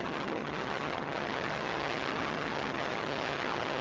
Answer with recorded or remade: remade